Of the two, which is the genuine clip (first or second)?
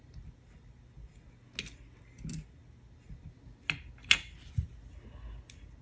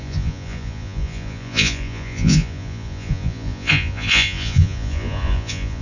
first